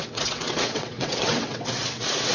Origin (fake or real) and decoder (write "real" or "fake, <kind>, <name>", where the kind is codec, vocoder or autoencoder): fake, vocoder, WaveNeXt